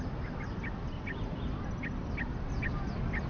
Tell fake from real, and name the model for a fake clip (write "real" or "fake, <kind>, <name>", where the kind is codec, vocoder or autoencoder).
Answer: real